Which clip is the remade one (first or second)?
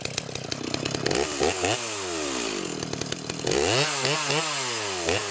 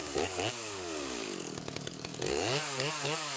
second